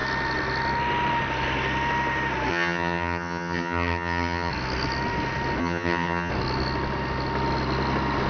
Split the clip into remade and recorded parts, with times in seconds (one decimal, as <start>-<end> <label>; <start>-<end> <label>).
0.0-2.5 recorded; 2.5-4.5 remade; 4.5-5.6 recorded; 5.6-6.3 remade; 6.3-8.3 recorded

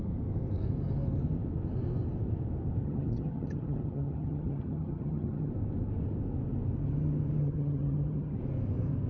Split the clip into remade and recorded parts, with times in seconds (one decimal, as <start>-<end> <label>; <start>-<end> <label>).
0.0-2.8 recorded; 2.8-5.5 remade; 5.5-7.4 recorded; 7.4-8.4 remade; 8.4-9.1 recorded

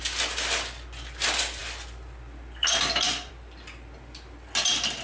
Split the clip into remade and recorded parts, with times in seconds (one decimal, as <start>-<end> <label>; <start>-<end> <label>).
0.0-5.0 recorded

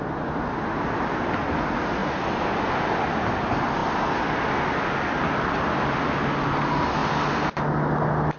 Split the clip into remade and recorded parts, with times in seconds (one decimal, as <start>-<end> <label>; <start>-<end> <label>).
0.0-8.4 recorded

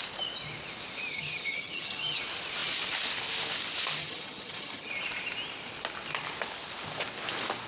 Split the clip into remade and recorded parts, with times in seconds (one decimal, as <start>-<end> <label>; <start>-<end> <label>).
0.0-1.1 recorded; 1.1-2.2 remade; 2.2-4.0 recorded; 4.0-4.9 remade; 4.9-7.7 recorded

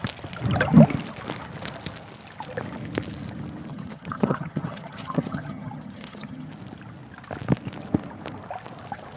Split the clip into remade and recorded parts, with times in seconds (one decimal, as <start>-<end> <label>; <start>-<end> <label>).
0.0-3.7 recorded; 3.7-6.5 remade; 6.5-9.2 recorded